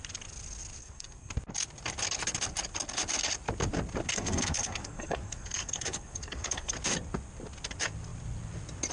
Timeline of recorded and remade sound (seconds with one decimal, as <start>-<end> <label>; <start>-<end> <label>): 0.0-0.8 recorded; 0.8-1.3 remade; 1.3-4.1 recorded; 4.1-6.7 remade; 6.7-8.9 recorded

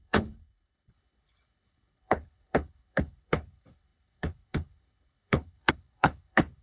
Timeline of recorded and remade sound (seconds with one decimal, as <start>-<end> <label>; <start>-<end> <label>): 0.0-6.6 remade

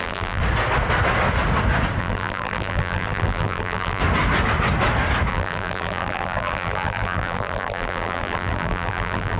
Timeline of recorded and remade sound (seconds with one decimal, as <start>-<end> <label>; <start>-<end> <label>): 0.0-0.4 remade; 0.4-2.0 recorded; 2.0-4.0 remade; 4.0-5.3 recorded; 5.3-9.4 remade

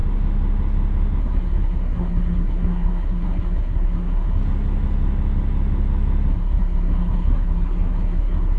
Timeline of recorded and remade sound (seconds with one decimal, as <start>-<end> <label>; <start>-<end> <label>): 0.0-1.2 recorded; 1.2-4.4 remade; 4.4-6.3 recorded; 6.3-8.6 remade